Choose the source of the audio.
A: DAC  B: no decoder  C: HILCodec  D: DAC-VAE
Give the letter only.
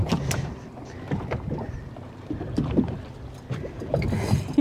B